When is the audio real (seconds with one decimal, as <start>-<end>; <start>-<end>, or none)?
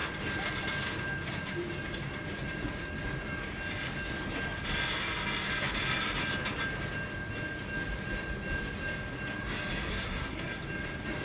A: 0.0-9.9; 10.6-11.2